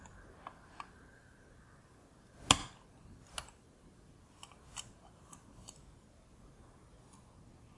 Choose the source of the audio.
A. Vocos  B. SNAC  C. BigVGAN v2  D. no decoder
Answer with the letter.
D